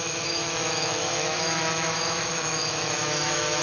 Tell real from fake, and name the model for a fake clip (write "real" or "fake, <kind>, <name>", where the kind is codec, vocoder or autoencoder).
fake, autoencoder, DAC-VAE